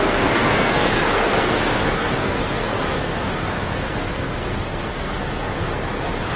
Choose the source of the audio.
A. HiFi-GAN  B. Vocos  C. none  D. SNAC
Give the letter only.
D